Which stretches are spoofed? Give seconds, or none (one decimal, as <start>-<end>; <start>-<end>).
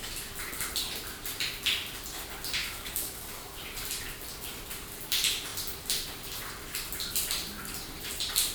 2.6-3.6